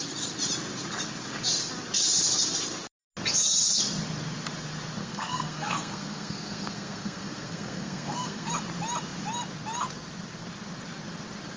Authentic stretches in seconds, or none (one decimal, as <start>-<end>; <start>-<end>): 0.0-5.0; 8.5-11.6